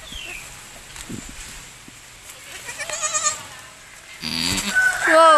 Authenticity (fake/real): real